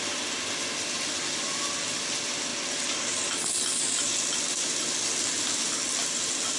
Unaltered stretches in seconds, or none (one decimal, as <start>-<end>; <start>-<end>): 0.0-6.6